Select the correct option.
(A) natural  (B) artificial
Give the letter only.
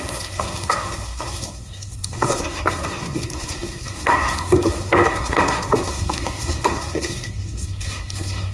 B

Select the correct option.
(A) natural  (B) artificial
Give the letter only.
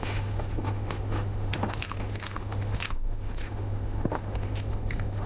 B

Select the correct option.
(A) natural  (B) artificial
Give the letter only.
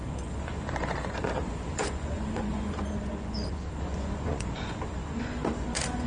B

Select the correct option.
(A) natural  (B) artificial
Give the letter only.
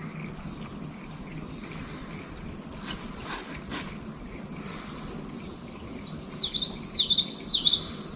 A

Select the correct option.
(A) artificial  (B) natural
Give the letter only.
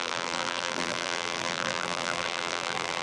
A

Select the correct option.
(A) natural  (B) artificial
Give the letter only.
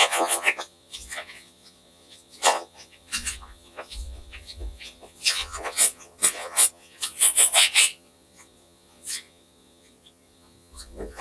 B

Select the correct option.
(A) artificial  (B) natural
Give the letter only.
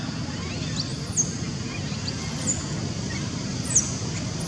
B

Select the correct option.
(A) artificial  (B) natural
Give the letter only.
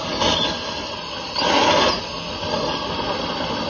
B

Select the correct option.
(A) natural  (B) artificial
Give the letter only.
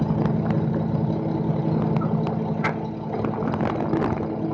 A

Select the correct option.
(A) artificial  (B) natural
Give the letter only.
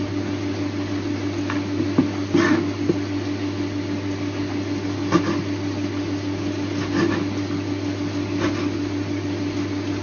B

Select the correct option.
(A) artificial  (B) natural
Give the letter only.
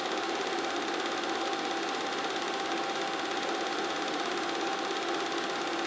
B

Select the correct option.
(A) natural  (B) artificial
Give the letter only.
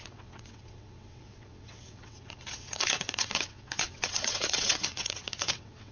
B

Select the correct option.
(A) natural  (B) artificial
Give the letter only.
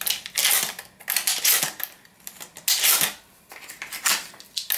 A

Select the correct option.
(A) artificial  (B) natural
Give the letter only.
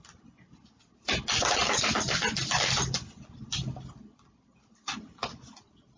B